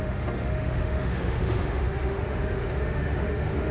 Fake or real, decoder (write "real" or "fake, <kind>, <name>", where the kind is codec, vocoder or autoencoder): fake, autoencoder, DAC-VAE